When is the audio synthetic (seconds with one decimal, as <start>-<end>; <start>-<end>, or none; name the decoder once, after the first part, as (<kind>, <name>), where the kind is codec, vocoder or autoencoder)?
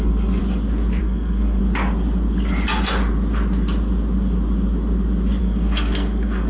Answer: 0.0-0.4 (codec, SNAC); 1.0-1.6; 5.4-6.5